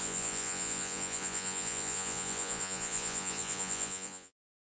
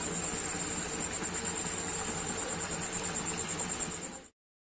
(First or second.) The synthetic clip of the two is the first